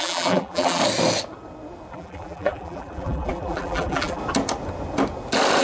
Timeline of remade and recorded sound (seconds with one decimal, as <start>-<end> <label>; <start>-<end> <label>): 0.0-0.8 remade; 0.8-1.9 recorded; 1.9-4.2 remade; 4.2-5.6 recorded

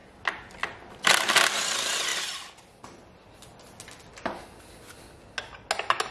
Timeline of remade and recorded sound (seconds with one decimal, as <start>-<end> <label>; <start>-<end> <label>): 0.0-6.1 recorded

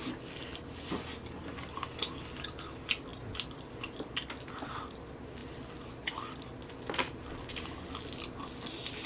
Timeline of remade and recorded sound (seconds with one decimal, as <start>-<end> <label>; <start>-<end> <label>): 0.0-3.1 recorded; 3.1-3.7 remade; 3.7-4.2 recorded; 4.2-4.8 remade; 4.8-9.1 recorded

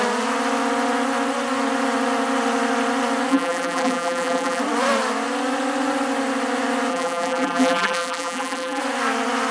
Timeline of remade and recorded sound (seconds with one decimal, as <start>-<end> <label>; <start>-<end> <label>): 0.0-3.3 recorded; 3.3-4.6 remade; 4.6-6.9 recorded; 6.9-8.8 remade; 8.8-9.5 recorded